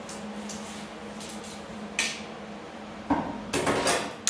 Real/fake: real